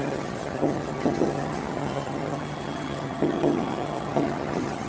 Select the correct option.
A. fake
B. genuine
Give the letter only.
A